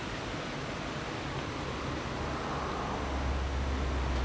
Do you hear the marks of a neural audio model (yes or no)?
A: no